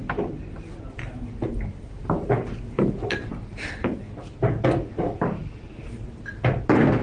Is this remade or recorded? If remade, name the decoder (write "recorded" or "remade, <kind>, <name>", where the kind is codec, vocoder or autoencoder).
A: recorded